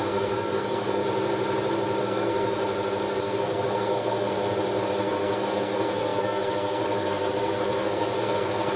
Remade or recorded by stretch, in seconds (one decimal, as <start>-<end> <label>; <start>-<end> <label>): 0.0-1.0 remade; 1.0-2.0 recorded; 2.0-2.6 remade; 2.6-3.2 recorded; 3.2-4.4 remade; 4.4-5.0 recorded; 5.0-8.8 remade